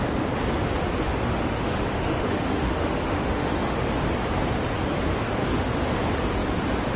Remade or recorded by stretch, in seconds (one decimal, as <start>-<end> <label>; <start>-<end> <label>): 0.0-1.1 recorded; 1.1-3.9 remade; 3.9-5.4 recorded; 5.4-6.0 remade; 6.0-7.0 recorded